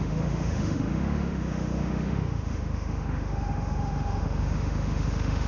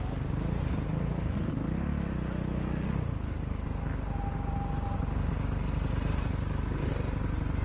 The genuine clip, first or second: second